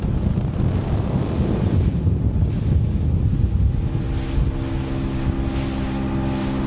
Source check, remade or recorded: recorded